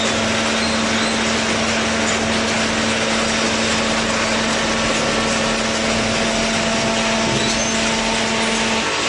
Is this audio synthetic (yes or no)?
no